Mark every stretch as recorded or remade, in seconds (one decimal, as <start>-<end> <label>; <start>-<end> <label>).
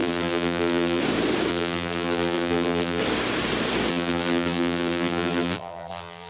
0.0-1.0 remade; 1.0-1.5 recorded; 1.5-3.0 remade; 3.0-3.9 recorded; 3.9-6.3 remade